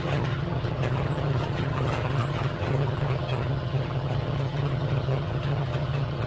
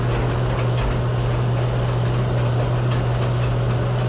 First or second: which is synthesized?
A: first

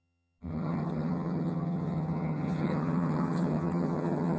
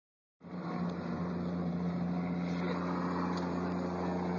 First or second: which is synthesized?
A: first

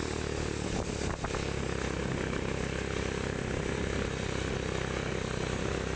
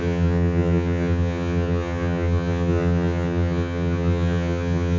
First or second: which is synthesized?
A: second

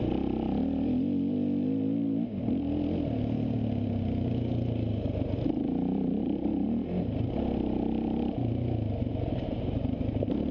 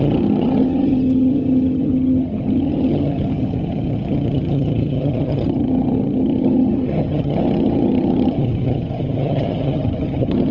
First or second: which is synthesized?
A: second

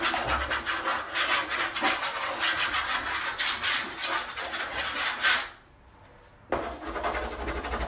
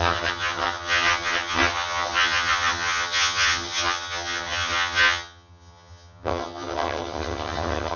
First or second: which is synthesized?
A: second